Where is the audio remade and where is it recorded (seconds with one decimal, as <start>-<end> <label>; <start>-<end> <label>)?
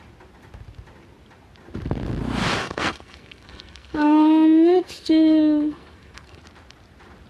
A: 0.0-2.6 recorded; 2.6-6.4 remade; 6.4-7.3 recorded